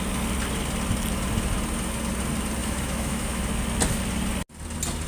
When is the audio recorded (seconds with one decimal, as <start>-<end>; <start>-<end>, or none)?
0.0-2.6; 3.4-5.1